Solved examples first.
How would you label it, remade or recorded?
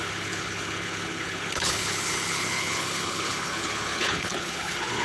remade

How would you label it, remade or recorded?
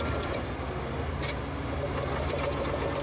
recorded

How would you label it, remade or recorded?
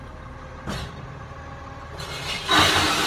recorded